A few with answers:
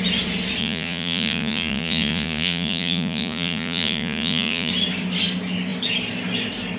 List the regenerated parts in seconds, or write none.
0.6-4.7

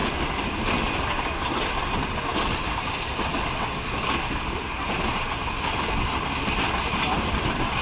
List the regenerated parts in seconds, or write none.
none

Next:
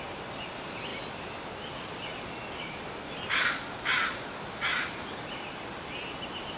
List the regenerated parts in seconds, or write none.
none

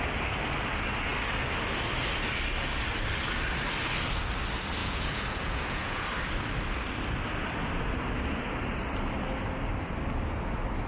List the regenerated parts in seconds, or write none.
4.8-6.0